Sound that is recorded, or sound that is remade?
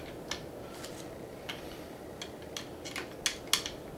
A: recorded